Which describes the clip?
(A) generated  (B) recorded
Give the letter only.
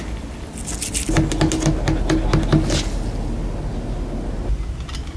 B